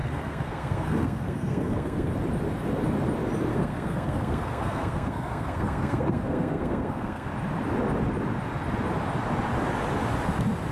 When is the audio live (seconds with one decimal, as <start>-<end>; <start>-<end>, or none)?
2.1-3.5; 7.3-10.7